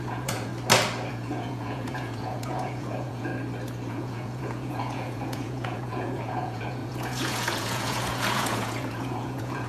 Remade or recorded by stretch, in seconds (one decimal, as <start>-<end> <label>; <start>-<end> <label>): 0.0-0.5 remade; 0.5-1.1 recorded; 1.1-3.3 remade; 3.3-3.9 recorded; 3.9-9.7 remade